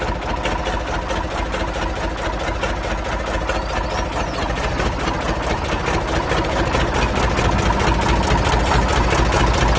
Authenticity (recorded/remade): recorded